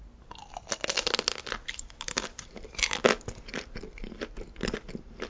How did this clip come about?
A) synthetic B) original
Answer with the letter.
B